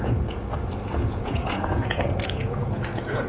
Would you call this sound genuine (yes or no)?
no